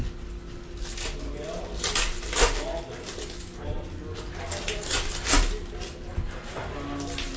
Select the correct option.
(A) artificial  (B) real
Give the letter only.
B